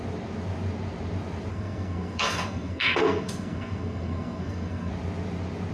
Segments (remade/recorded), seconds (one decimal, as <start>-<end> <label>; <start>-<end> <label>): 0.0-1.5 recorded; 1.5-4.9 remade; 4.9-5.7 recorded